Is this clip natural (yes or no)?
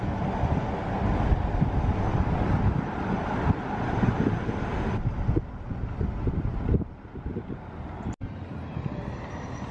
yes